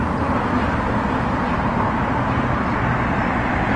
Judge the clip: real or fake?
real